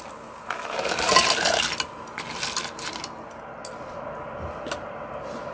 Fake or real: real